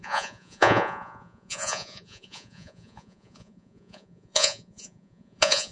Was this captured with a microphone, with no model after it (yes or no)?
no